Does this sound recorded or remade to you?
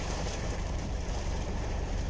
remade